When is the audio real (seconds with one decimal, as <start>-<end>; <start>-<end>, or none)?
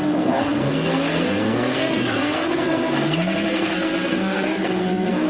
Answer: none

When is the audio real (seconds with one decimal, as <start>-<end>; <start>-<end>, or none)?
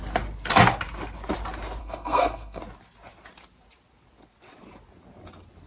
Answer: 0.0-1.8; 2.6-5.7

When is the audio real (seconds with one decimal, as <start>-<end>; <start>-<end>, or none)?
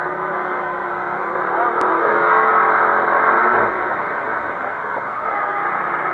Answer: 1.4-1.9; 2.5-3.4; 5.6-6.1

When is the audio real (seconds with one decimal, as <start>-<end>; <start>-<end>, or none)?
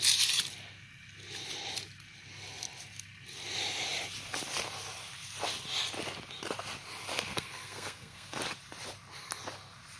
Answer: 0.0-7.1; 8.4-10.0